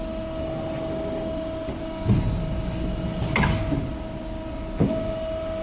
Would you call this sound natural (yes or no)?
yes